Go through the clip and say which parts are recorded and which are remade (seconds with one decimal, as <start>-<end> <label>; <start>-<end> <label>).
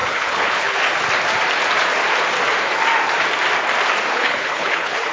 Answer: 0.0-0.8 remade; 0.8-4.1 recorded; 4.1-5.1 remade